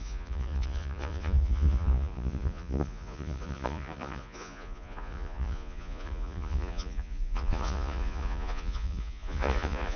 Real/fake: fake